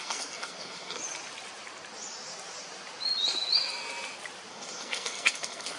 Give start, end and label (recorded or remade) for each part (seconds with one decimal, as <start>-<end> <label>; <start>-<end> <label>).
0.0-1.0 remade; 1.0-4.5 recorded; 4.5-5.8 remade